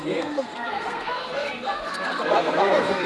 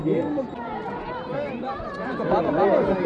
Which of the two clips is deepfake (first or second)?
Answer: first